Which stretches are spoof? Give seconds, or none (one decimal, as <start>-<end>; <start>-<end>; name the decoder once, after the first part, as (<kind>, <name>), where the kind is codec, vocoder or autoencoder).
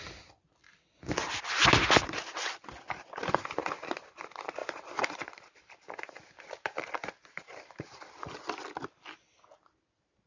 4.6-8.0 (vocoder, BigVGAN v2)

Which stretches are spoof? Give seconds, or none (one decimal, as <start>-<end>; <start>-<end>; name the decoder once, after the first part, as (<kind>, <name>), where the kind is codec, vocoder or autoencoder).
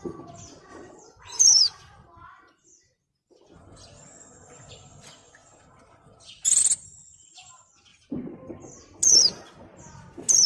0.7-1.4 (vocoder, BigVGAN v2); 7.9-9.1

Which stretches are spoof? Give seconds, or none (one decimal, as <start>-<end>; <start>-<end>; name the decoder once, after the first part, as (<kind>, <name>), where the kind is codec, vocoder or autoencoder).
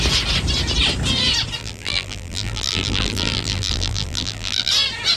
1.6-4.7 (vocoder, BigVGAN v2)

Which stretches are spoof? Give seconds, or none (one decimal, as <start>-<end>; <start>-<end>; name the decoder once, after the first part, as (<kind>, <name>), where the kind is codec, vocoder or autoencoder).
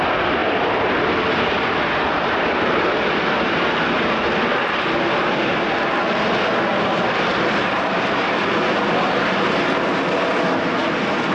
0.4-4.8 (vocoder, BigVGAN v2); 6.7-8.4; 10.8-11.3